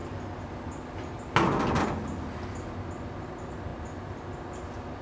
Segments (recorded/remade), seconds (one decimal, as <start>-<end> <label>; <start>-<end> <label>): 0.0-5.0 recorded